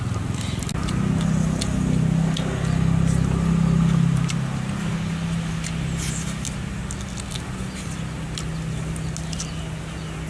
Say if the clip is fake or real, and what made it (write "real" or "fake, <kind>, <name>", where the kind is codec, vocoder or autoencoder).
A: real